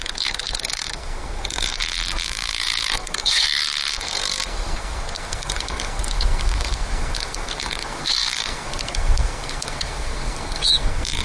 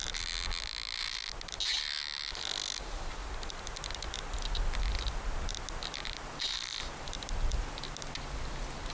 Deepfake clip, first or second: first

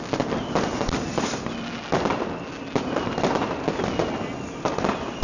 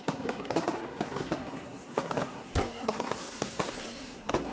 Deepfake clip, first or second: second